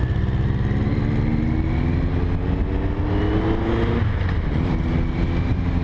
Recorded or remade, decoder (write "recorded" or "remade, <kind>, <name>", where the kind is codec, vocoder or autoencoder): recorded